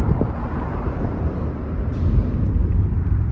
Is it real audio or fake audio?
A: real